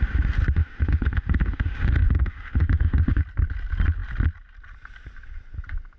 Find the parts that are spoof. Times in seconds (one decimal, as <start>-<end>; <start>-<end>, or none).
0.6-3.2